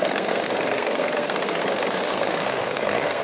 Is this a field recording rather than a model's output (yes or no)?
no